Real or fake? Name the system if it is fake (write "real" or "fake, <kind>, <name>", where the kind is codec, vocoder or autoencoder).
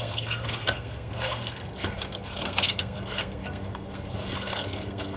fake, codec, SNAC